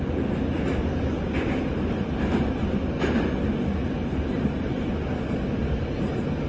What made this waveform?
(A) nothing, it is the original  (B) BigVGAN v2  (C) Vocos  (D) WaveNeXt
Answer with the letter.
A